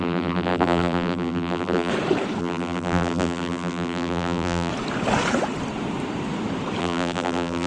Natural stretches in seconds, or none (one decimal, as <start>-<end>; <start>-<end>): 1.9-2.4; 4.7-6.8